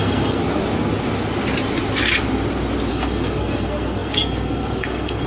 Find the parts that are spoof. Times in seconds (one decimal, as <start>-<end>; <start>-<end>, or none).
0.0-0.4; 2.9-5.3